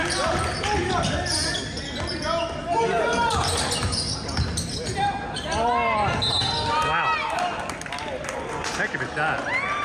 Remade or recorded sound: recorded